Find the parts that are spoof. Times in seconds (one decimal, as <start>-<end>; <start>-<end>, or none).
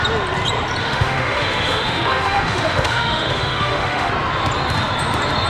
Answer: 0.8-4.1